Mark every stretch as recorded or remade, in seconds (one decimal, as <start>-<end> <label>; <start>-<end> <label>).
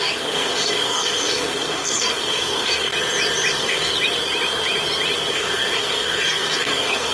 0.0-2.9 remade; 2.9-3.5 recorded; 3.5-3.9 remade; 3.9-5.3 recorded; 5.3-7.1 remade